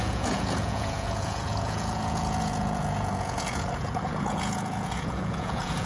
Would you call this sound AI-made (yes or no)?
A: yes